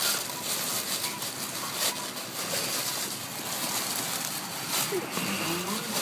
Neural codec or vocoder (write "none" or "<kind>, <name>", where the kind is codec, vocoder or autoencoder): none